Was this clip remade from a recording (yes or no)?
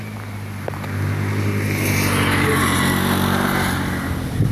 no